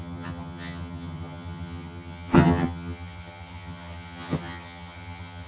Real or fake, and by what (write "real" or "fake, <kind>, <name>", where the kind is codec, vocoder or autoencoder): fake, vocoder, HiFi-GAN